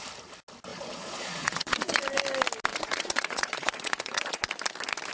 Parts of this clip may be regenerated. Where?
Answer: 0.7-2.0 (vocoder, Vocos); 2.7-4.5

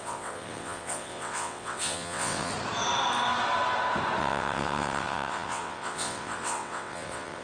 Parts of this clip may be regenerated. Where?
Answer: 0.0-2.5 (vocoder, WaveNeXt); 4.2-7.4

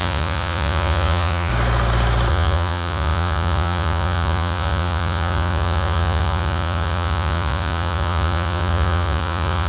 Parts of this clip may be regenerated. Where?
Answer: 0.0-1.5 (vocoder, Vocos); 2.3-9.7